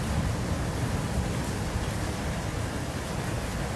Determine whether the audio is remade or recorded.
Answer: recorded